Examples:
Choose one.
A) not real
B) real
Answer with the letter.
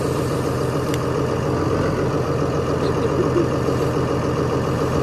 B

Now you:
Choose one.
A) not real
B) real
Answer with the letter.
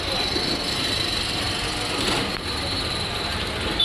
A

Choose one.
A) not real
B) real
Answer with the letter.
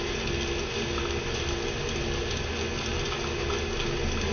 B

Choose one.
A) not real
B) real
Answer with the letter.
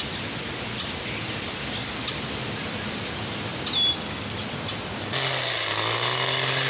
B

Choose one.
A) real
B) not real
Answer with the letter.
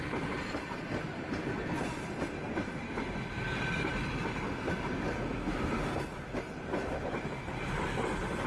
A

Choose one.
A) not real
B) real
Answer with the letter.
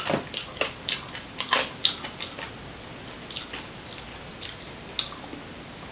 B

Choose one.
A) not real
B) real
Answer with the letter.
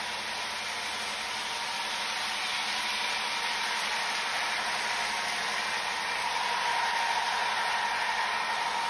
B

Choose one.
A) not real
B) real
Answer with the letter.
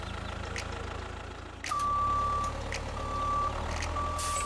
B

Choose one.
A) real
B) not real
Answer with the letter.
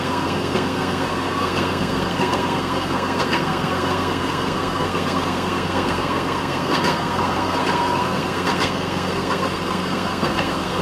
B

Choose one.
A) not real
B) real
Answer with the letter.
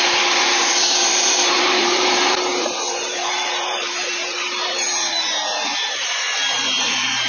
A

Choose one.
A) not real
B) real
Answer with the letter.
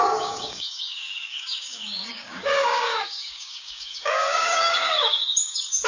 A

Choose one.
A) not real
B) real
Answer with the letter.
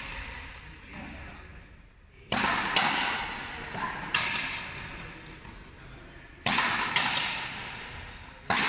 B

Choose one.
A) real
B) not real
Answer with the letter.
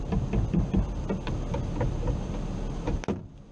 A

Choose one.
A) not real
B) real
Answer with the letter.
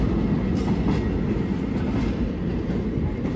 B